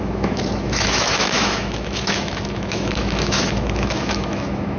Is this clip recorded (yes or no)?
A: no